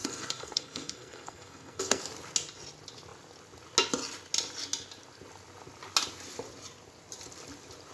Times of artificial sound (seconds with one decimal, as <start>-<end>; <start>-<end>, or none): 0.0-2.0